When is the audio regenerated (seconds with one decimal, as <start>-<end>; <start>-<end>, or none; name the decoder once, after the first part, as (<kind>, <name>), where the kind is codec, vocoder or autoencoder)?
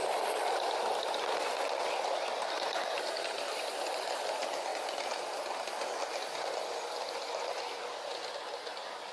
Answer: none